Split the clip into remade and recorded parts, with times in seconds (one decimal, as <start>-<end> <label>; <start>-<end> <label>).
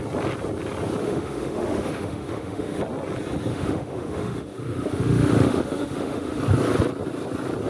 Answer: 0.0-1.0 recorded; 1.0-2.8 remade; 2.8-3.5 recorded; 3.5-6.4 remade; 6.4-7.7 recorded